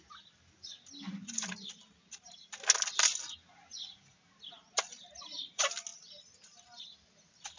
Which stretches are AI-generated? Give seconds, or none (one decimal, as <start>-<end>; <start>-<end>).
none

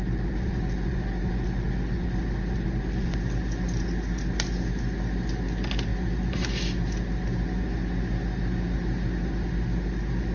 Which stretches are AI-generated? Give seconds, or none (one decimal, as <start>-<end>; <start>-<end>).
5.9-6.5

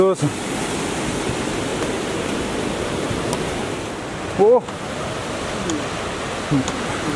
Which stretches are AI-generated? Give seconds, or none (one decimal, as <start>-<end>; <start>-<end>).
none